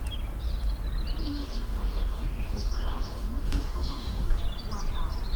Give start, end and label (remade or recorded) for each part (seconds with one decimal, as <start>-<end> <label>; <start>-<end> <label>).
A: 0.0-1.2 recorded; 1.2-4.4 remade; 4.4-5.4 recorded